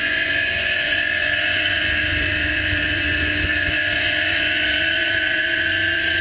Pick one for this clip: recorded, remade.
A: remade